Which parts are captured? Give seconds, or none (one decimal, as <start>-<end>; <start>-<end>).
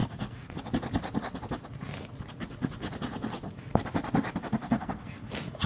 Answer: 0.6-4.6; 5.3-5.7